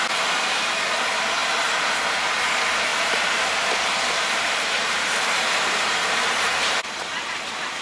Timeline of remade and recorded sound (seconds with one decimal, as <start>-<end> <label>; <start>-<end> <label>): 0.0-2.9 recorded; 2.9-7.8 remade